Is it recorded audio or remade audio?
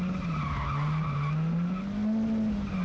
recorded